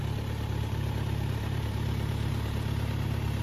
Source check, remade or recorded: remade